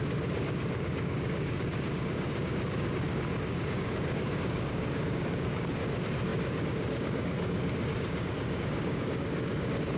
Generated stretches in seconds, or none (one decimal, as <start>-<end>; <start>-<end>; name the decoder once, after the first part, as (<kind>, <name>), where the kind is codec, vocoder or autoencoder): 0.0-10.0 (codec, DAC)